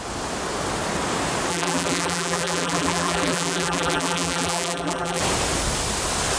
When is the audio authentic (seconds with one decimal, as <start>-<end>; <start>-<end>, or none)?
0.0-1.5; 5.2-6.4